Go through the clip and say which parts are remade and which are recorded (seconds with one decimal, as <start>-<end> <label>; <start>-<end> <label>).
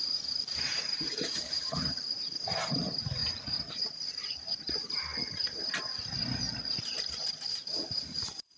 0.0-8.6 remade